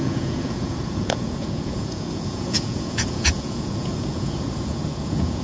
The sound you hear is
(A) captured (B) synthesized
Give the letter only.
B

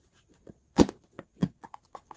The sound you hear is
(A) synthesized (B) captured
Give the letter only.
A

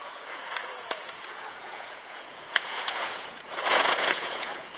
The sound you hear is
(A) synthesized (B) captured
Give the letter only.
A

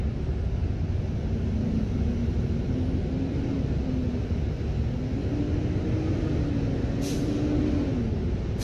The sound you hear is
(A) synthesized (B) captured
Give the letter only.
B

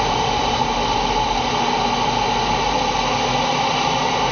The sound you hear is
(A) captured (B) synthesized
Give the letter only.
A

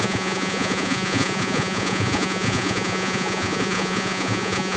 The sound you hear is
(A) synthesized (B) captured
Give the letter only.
A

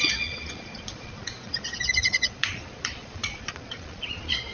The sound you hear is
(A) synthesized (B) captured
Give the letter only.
A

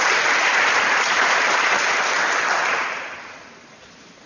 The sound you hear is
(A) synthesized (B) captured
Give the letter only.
B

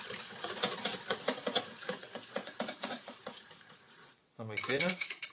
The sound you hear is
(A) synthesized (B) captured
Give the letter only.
A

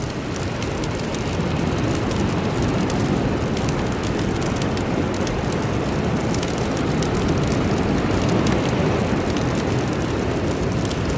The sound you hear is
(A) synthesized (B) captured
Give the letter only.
B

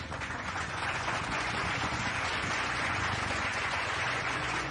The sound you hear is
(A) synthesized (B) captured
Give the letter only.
A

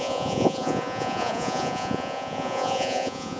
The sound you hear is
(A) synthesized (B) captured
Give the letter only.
A